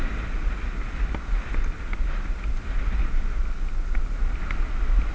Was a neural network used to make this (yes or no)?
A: no